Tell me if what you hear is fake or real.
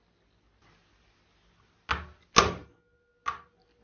real